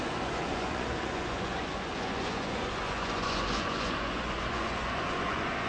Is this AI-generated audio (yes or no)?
yes